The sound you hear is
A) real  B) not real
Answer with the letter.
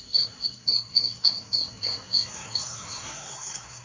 B